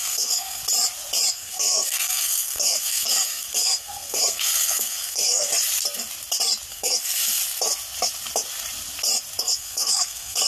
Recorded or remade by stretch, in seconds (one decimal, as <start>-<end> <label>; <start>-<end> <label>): 0.0-0.6 remade; 0.6-1.3 recorded; 1.3-5.5 remade; 5.5-6.7 recorded; 6.7-7.4 remade; 7.4-9.4 recorded; 9.4-10.5 remade